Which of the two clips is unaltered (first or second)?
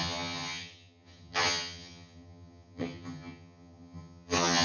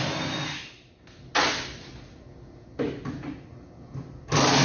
second